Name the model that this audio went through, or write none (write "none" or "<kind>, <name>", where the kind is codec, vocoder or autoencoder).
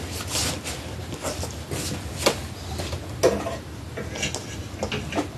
none